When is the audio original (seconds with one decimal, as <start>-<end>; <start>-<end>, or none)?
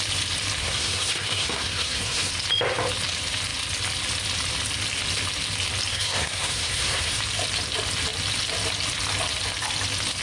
0.0-0.6; 2.3-5.9; 7.2-10.2